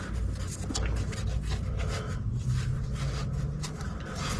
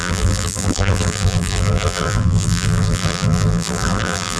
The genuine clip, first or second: first